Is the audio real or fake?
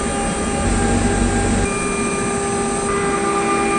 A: real